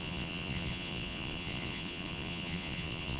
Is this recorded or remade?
remade